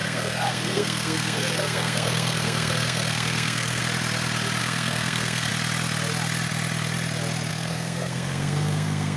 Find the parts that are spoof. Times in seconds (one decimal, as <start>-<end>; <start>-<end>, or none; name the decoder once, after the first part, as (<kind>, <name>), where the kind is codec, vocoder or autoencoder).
0.0-3.8 (codec, SNAC); 4.6-5.5; 7.5-9.2